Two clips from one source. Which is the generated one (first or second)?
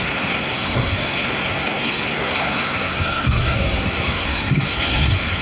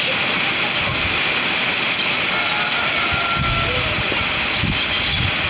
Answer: first